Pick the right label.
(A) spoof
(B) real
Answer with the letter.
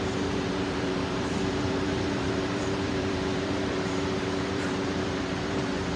A